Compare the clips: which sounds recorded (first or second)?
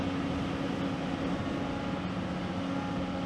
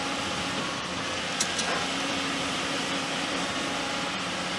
first